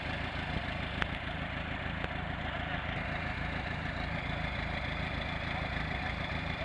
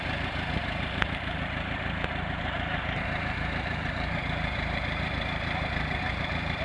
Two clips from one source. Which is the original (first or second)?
first